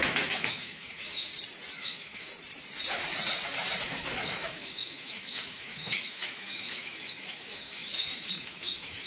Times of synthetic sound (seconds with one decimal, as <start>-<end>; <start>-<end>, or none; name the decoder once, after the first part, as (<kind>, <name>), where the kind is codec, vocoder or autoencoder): 0.0-1.3 (autoencoder, DAC-VAE); 1.8-2.3; 3.8-9.1

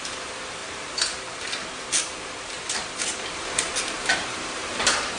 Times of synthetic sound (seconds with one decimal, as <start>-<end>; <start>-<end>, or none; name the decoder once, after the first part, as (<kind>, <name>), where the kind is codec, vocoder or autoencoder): none